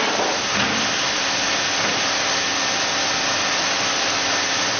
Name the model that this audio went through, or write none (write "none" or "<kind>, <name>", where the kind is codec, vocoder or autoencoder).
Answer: none